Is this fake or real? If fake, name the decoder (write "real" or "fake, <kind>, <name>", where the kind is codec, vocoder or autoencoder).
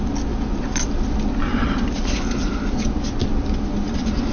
real